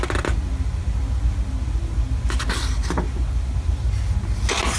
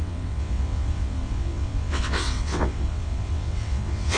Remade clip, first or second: second